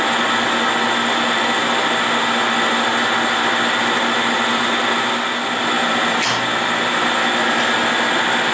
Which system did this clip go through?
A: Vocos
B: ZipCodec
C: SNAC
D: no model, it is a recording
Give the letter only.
D